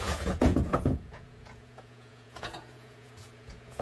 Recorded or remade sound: remade